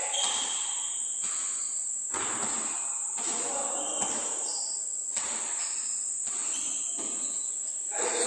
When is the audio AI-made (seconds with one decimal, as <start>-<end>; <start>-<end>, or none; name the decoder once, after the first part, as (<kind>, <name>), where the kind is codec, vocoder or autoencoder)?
none

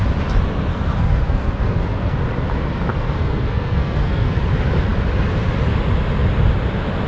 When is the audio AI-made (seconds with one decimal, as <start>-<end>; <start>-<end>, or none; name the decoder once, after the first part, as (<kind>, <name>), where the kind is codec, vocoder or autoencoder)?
0.7-2.2 (codec, SNAC); 2.9-4.4

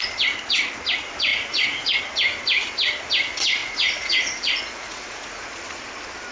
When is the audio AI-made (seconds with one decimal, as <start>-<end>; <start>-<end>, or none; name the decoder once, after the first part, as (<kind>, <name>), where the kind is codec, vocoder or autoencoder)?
1.3-2.0 (vocoder, Vocos); 3.6-5.6

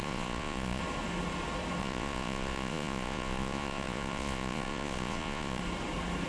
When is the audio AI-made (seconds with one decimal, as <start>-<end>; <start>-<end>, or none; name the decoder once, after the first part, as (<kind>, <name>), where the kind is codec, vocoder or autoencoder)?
0.0-0.8 (vocoder, Vocos); 1.8-5.6

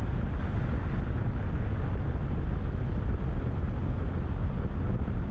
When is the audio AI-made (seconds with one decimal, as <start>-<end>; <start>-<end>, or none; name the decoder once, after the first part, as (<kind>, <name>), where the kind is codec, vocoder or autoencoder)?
none

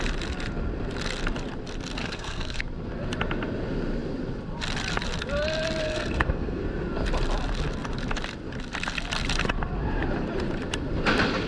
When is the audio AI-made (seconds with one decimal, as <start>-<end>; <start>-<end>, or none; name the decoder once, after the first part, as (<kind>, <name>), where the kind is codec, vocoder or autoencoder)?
2.0-2.6 (codec, SNAC); 5.8-6.6